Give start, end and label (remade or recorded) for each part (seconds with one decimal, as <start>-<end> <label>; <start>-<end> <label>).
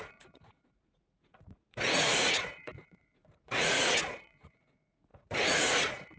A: 0.0-6.2 remade